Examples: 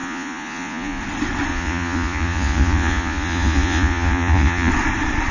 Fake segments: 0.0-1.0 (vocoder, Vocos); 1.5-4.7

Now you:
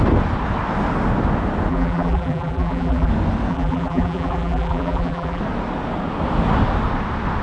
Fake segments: 1.7-3.1 (vocoder, BigVGAN v2); 3.5-5.4

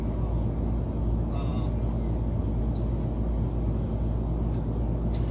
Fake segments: none

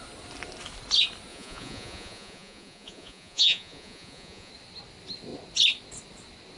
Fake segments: 1.3-4.5 (vocoder, Vocos)